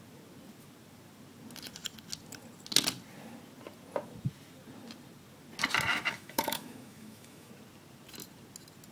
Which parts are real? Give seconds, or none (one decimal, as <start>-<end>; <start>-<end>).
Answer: 0.0-5.9; 7.5-8.9